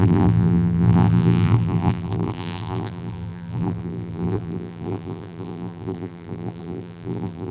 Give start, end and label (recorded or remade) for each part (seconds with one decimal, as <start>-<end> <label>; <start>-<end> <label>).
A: 0.0-7.5 remade